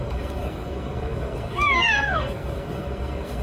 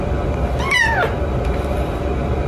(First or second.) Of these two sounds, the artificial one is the first